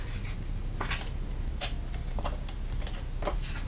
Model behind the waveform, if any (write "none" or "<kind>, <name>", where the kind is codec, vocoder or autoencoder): none